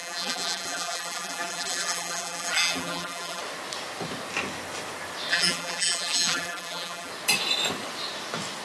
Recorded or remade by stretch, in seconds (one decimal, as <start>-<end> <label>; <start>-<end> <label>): 0.0-3.4 remade; 3.4-5.3 recorded; 5.3-7.1 remade; 7.1-8.6 recorded